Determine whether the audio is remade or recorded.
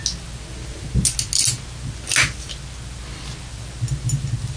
recorded